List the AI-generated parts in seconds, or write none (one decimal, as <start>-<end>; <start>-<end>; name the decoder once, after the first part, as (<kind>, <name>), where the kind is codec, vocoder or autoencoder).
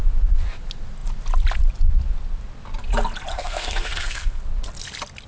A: 3.3-4.4 (codec, SNAC)